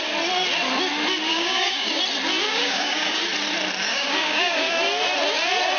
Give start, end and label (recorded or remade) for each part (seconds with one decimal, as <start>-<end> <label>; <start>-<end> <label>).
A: 0.0-1.3 recorded; 1.3-1.9 remade; 1.9-2.5 recorded; 2.5-3.2 remade; 3.2-3.9 recorded; 3.9-4.7 remade; 4.7-5.8 recorded